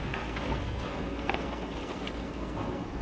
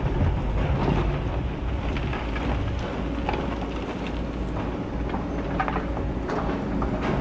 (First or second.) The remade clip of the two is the first